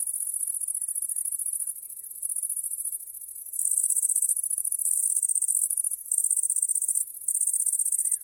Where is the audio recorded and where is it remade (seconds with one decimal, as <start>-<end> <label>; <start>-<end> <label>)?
0.0-3.4 recorded; 3.4-7.0 remade; 7.0-8.2 recorded